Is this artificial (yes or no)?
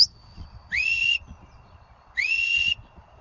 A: yes